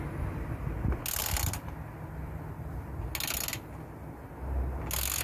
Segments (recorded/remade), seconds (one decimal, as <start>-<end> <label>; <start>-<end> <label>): 0.0-1.2 recorded; 1.2-2.9 remade; 2.9-5.2 recorded